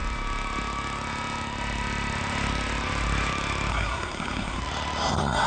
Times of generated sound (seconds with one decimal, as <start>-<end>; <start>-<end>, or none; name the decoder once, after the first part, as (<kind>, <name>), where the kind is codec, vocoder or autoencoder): 3.7-4.6 (codec, SNAC)